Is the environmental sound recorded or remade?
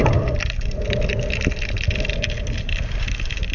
recorded